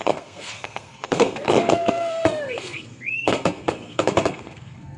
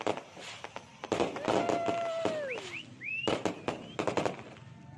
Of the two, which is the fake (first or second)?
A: first